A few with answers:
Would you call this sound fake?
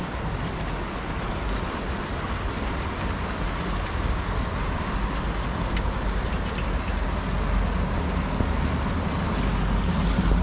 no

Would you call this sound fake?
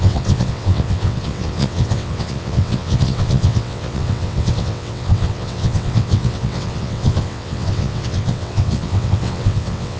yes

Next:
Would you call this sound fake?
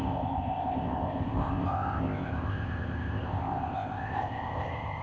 yes